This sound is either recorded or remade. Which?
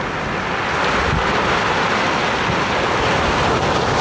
recorded